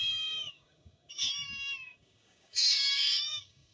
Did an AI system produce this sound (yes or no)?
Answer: yes